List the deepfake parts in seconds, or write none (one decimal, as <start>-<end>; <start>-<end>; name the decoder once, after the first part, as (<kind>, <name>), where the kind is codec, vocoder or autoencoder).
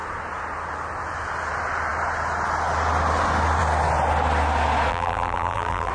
4.9-5.9 (vocoder, BigVGAN v2)